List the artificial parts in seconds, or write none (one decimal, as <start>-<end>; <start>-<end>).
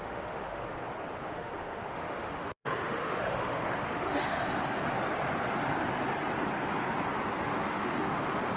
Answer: 0.0-0.7; 1.2-4.4; 7.6-8.2